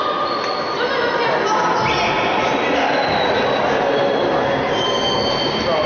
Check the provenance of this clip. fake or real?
real